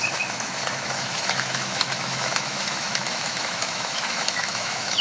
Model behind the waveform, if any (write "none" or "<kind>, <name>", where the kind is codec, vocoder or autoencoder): autoencoder, DAC-VAE